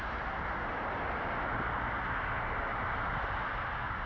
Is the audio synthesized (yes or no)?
no